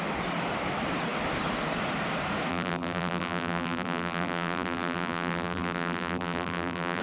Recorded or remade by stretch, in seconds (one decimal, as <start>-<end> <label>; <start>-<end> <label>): 0.0-2.5 recorded; 2.5-7.0 remade